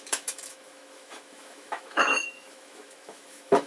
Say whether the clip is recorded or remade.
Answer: remade